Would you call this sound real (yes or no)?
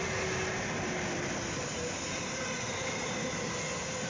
yes